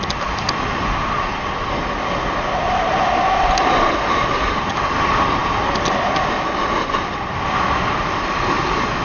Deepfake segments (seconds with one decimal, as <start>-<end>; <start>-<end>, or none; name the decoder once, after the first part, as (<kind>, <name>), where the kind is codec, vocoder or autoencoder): none